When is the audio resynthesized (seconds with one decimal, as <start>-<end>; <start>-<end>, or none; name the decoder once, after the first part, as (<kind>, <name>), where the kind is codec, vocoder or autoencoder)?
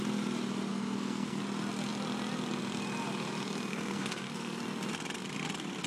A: 0.7-1.4 (codec, SNAC); 3.7-4.6